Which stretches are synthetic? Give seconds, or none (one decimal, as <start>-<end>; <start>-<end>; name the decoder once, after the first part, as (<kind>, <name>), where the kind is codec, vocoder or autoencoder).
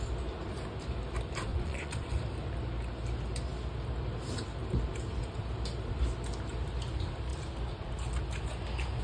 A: 1.5-2.2 (vocoder, Vocos)